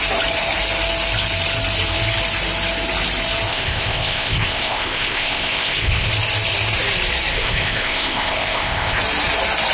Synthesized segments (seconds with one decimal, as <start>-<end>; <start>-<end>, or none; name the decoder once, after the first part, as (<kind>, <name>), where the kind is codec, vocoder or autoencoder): 3.5-6.1 (codec, ZipCodec); 7.3-9.0